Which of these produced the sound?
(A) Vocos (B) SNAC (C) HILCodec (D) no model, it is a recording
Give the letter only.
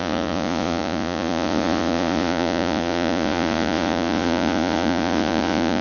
A